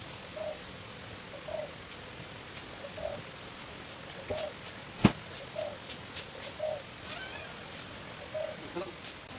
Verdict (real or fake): real